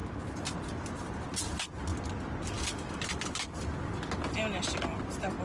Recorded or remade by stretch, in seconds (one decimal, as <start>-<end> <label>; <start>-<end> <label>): 0.0-5.4 recorded